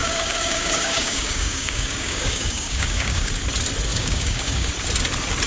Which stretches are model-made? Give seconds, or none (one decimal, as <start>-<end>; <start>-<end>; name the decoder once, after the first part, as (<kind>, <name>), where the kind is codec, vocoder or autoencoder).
0.0-3.3 (codec, DAC); 3.9-4.7